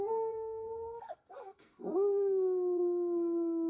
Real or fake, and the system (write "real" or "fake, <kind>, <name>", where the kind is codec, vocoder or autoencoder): fake, codec, SNAC